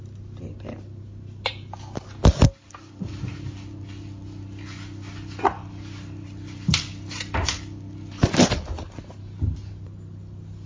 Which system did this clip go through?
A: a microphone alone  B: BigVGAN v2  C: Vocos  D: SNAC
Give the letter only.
A